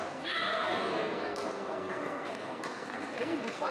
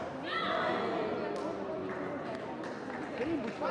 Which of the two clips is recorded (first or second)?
second